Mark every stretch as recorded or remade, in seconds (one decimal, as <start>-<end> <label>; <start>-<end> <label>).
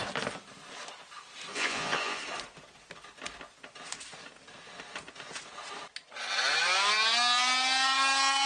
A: 0.0-1.5 recorded; 1.5-2.2 remade; 2.2-8.5 recorded